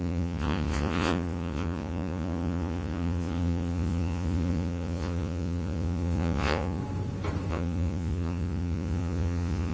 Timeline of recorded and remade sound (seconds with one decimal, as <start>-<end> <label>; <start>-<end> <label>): 0.0-6.8 remade; 6.8-7.5 recorded; 7.5-9.7 remade